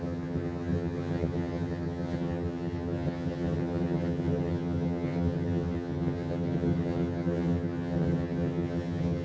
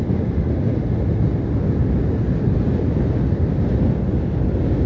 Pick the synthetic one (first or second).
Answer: first